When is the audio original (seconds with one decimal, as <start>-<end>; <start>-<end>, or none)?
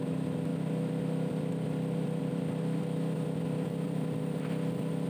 0.0-5.1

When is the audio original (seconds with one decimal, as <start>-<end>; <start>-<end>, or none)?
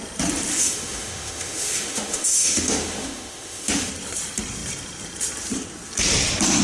0.0-0.5; 3.9-6.6